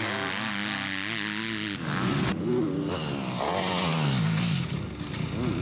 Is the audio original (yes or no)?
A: yes